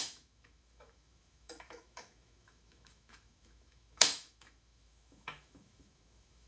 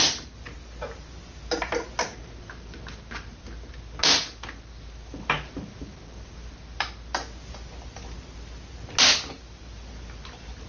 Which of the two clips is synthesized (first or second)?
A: first